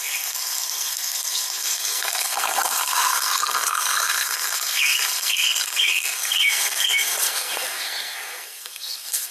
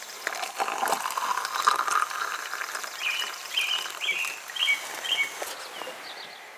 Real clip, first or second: second